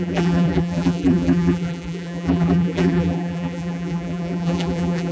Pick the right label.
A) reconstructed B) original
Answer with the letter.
A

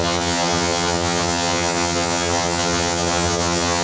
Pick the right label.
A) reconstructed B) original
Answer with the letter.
A